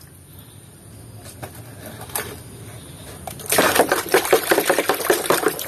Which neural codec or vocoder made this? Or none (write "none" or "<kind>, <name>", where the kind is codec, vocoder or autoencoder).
none